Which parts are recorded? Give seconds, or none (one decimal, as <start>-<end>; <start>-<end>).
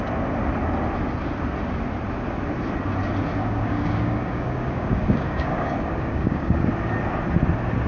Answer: 0.0-3.4; 6.7-7.9